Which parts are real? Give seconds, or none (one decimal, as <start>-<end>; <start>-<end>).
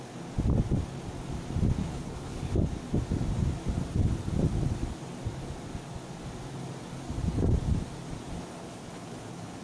0.0-1.8; 2.6-8.6